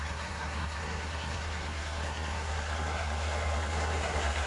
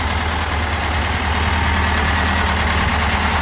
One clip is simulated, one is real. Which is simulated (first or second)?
first